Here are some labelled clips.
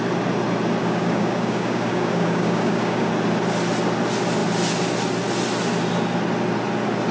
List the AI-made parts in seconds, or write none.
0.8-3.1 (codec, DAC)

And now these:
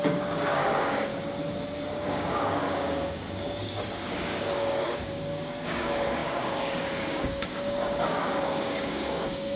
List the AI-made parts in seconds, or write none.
0.0-1.1 (codec, DAC); 1.9-9.6

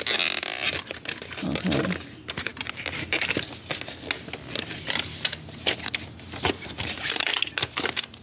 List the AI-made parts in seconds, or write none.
none

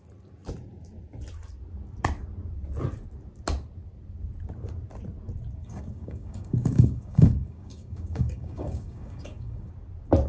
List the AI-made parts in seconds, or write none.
5.6-9.7 (codec, DAC)